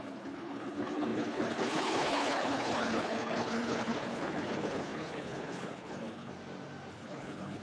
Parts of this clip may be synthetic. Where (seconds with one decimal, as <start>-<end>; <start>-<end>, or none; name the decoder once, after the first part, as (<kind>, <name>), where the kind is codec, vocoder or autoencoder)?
0.0-6.3 (codec, HILCodec); 6.9-7.6